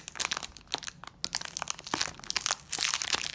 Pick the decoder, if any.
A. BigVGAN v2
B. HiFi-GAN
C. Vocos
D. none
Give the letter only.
D